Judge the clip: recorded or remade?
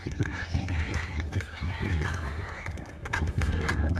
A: remade